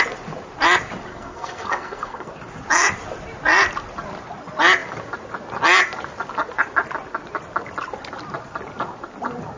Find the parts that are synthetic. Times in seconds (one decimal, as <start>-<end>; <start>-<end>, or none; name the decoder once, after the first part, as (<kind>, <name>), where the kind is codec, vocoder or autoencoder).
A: 1.1-2.3 (codec, SNAC)